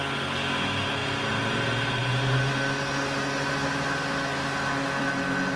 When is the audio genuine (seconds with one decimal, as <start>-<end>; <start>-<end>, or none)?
0.0-5.6